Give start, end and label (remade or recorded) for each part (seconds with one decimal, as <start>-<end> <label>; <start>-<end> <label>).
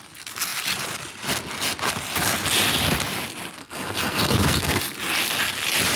0.0-3.6 recorded; 3.6-4.8 remade; 4.8-6.0 recorded